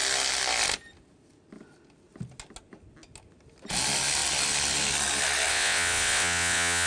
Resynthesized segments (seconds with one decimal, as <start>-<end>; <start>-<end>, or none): 5.5-6.9